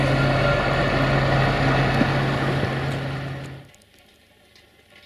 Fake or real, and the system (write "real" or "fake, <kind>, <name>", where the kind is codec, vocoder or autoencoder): real